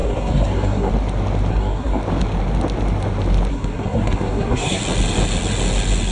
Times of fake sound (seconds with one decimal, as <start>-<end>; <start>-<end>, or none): 0.0-0.9; 1.5-2.0; 3.5-4.8